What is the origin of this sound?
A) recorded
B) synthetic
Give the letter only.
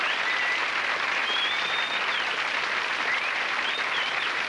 A